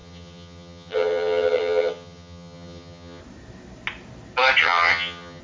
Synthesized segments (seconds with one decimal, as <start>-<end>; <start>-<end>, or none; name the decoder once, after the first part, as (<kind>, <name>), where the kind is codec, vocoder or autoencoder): 0.0-3.2 (vocoder, HiFi-GAN); 4.6-5.4

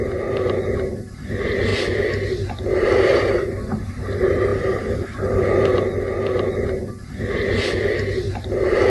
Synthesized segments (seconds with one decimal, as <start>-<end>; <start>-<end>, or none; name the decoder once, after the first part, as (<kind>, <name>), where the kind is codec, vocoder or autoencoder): none

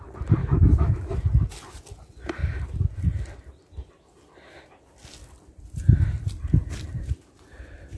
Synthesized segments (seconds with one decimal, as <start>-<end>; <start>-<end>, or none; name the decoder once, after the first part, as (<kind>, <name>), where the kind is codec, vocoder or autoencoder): 0.4-1.1 (autoencoder, DAC-VAE)

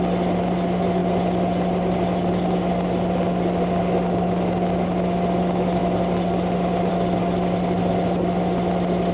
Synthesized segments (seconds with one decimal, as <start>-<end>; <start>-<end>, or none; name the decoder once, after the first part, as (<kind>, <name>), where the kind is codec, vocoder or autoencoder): none

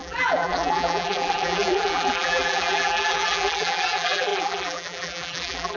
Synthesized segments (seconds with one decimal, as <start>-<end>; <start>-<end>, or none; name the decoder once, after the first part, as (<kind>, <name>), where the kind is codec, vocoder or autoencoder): 0.0-5.8 (vocoder, BigVGAN v2)

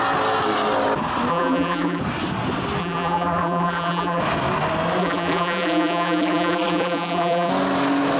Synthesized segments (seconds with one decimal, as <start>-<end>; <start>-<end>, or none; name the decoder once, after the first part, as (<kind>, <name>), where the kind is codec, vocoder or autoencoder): 1.3-2.0 (vocoder, BigVGAN v2); 2.8-4.2; 5.0-7.5

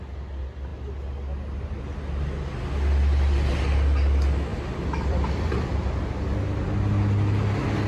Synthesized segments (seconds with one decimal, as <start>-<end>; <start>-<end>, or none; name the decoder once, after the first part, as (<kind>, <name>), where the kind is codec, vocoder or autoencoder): 4.5-6.0 (vocoder, BigVGAN v2)